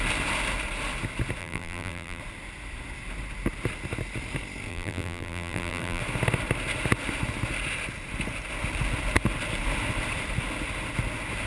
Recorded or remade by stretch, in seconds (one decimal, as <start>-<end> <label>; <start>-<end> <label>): 0.0-1.4 recorded; 1.4-2.2 remade; 2.2-4.7 recorded; 4.7-6.0 remade; 6.0-11.5 recorded